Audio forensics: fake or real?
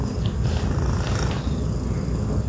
real